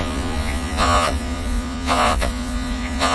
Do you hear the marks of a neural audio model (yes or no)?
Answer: yes